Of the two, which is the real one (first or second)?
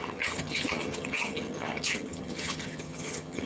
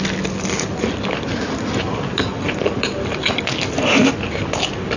second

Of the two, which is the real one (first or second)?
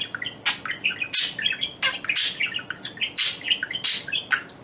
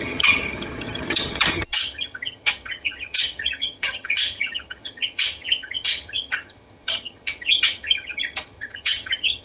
first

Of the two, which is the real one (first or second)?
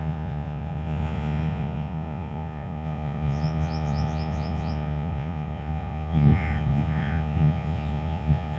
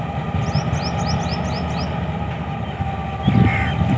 second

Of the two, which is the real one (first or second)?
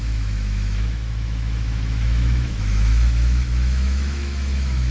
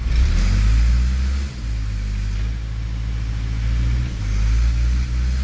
second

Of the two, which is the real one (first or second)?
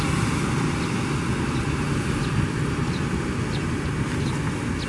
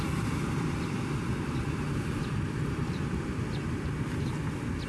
first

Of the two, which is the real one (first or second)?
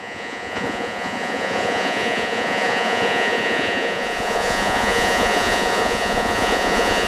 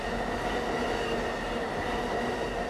second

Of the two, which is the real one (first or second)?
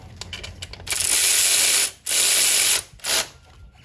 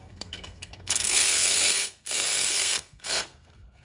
first